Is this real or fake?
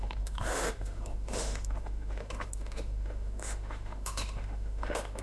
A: fake